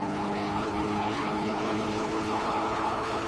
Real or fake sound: fake